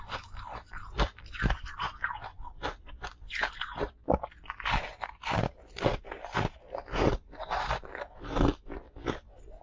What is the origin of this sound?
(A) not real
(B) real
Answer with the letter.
B